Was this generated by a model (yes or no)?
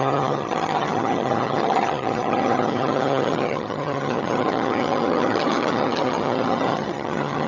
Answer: yes